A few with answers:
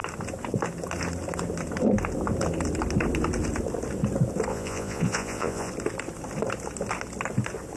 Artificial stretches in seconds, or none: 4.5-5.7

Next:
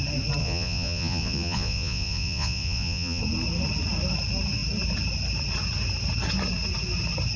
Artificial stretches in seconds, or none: 0.4-3.2

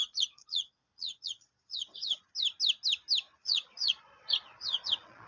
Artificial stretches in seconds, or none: 0.0-2.2; 3.4-5.3

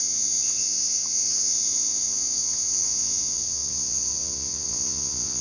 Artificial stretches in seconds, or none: 0.0-5.4

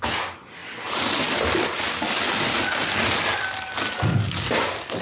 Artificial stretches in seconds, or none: none

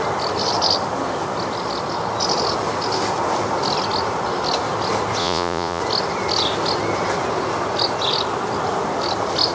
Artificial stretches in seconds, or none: 5.2-5.8

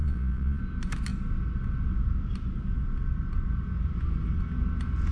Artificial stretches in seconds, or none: 0.0-0.6

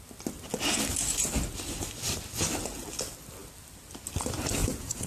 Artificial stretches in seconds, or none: 4.6-5.1